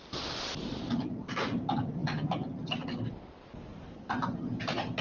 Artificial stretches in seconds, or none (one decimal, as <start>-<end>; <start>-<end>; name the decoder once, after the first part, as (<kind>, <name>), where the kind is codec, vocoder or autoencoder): none